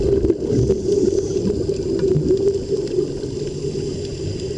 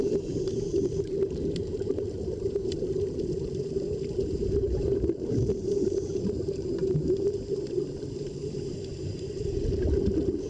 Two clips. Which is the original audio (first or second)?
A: first